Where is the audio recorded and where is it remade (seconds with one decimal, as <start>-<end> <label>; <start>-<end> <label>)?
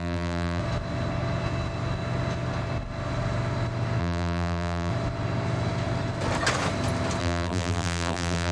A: 0.0-0.6 remade; 0.6-4.0 recorded; 4.0-4.9 remade; 4.9-7.2 recorded; 7.2-8.5 remade